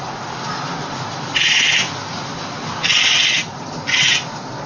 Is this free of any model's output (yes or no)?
yes